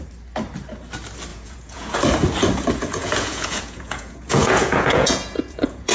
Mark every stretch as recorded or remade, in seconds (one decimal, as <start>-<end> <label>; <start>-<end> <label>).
0.0-1.3 recorded; 1.3-2.0 remade; 2.0-2.8 recorded; 2.8-5.9 remade